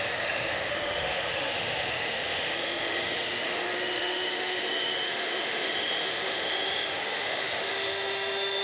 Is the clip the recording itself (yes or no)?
no